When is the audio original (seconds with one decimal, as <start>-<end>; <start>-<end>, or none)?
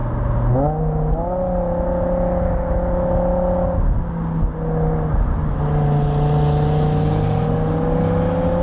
0.0-8.6